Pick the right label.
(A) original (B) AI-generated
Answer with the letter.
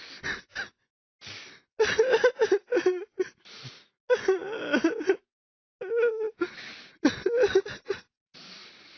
A